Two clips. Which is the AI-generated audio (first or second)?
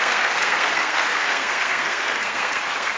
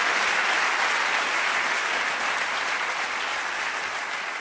first